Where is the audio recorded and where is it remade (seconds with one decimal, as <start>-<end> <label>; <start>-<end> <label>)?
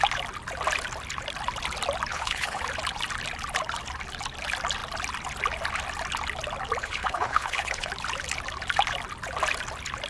0.0-2.1 recorded; 2.1-2.6 remade; 2.6-6.8 recorded; 6.8-7.9 remade; 7.9-10.1 recorded